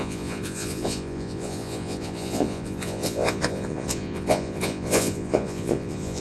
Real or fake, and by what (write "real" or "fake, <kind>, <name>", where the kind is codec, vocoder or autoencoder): fake, vocoder, Vocos